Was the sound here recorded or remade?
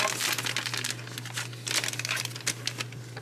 recorded